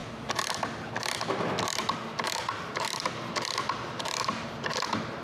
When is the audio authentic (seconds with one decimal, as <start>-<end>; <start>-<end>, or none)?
0.0-5.2